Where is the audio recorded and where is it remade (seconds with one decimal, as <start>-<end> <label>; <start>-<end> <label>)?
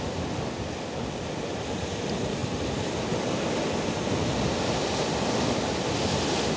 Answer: 0.0-6.6 recorded